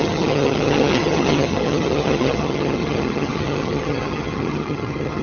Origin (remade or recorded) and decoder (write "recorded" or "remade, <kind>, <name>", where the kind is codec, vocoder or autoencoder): remade, vocoder, HiFi-GAN